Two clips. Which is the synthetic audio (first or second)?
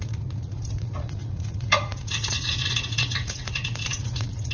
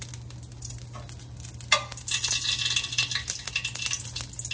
first